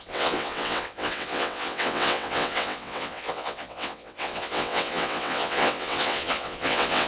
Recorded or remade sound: remade